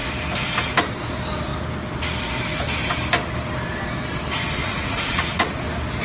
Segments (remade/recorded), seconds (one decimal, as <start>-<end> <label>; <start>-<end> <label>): 0.0-4.6 recorded; 4.6-5.5 remade; 5.5-6.0 recorded

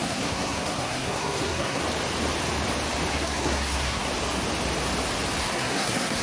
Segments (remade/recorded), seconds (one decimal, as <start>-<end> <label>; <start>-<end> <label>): 0.0-1.8 remade; 1.8-3.1 recorded; 3.1-4.1 remade; 4.1-5.4 recorded; 5.4-6.2 remade

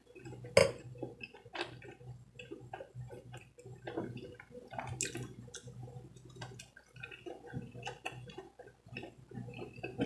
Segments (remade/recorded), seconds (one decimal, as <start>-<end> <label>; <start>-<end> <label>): 0.0-10.1 recorded

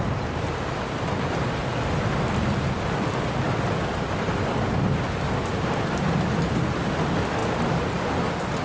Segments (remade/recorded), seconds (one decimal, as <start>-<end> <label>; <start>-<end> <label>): 0.0-1.6 recorded; 1.6-4.3 remade; 4.3-7.4 recorded; 7.4-8.1 remade; 8.1-8.6 recorded

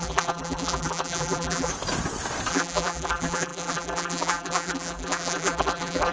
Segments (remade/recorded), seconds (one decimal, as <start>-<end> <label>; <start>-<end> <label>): 0.0-1.7 remade; 1.7-2.5 recorded; 2.5-6.1 remade